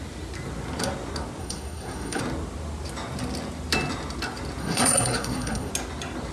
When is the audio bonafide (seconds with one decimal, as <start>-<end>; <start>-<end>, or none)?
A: 0.0-1.4; 2.2-4.6; 5.7-6.3